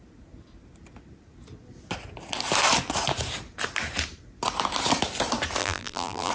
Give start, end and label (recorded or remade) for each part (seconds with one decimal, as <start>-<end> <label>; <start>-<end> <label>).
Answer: 0.0-5.6 recorded; 5.6-6.3 remade